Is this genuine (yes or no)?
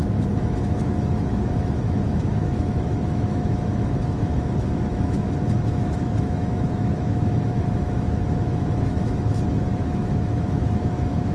no